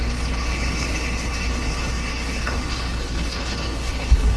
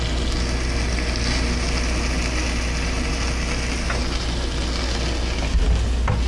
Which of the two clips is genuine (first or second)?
second